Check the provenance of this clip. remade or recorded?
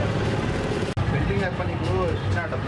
recorded